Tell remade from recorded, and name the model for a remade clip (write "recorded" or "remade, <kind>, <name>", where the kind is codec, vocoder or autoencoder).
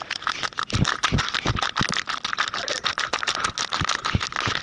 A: recorded